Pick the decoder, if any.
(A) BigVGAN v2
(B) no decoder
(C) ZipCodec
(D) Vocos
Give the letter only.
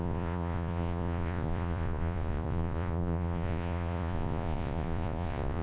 D